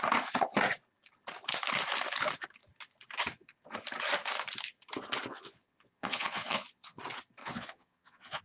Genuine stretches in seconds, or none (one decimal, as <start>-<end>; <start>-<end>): 0.0-5.3; 7.0-7.4

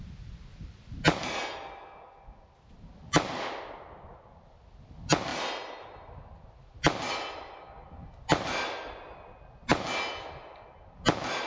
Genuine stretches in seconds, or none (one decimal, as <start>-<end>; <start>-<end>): 0.0-11.5

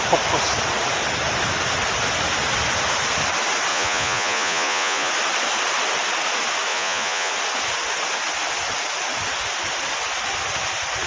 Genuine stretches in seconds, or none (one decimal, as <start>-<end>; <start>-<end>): 0.0-3.7; 5.1-6.7; 7.3-11.1